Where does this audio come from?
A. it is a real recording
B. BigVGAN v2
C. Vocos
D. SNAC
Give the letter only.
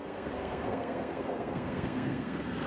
D